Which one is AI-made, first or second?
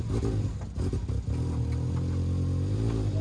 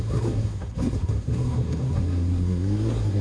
second